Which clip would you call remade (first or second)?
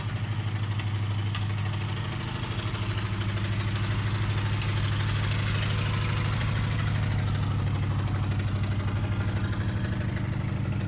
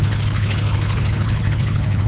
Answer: second